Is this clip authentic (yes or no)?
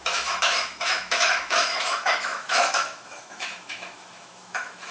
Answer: no